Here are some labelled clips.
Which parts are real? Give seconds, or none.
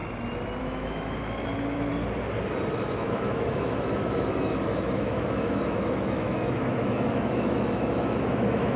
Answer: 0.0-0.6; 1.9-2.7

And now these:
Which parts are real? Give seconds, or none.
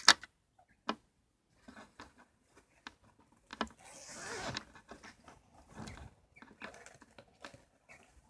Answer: 0.0-8.3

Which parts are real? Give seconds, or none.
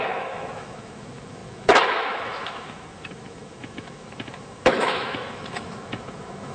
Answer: none